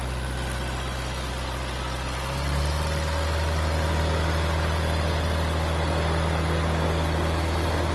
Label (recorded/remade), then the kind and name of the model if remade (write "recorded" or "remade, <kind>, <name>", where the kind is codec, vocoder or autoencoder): recorded